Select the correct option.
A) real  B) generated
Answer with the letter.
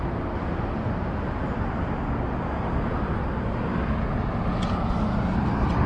A